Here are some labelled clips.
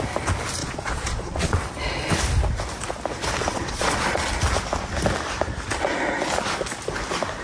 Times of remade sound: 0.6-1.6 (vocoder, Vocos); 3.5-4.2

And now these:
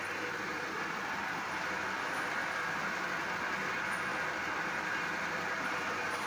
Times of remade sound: none